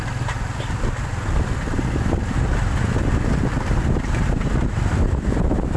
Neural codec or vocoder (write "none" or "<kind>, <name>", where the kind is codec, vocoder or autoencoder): none